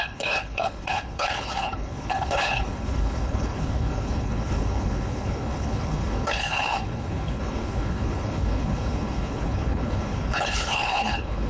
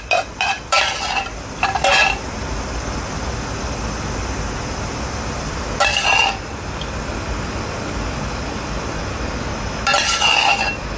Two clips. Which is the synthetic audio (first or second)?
first